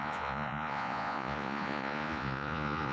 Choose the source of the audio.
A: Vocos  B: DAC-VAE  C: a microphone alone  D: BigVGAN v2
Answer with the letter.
A